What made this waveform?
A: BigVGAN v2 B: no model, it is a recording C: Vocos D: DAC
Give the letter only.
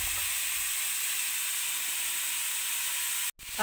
B